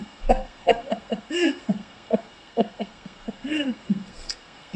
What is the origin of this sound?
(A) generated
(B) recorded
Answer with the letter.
A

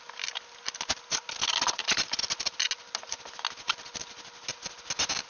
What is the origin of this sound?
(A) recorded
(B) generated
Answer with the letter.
A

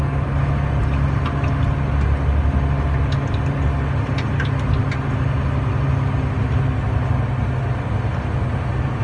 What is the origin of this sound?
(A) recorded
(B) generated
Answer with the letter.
A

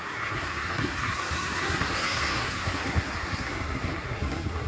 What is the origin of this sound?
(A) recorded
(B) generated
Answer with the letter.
B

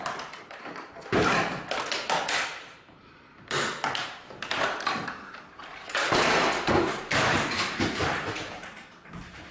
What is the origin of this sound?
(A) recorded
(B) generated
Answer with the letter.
B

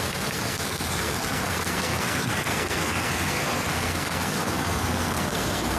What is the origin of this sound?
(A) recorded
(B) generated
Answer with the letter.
B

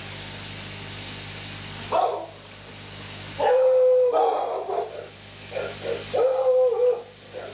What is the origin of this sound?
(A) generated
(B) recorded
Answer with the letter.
B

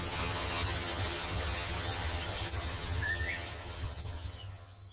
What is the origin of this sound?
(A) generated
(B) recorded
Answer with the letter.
A